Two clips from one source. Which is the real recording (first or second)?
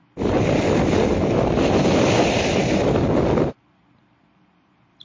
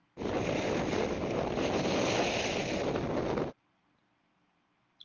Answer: second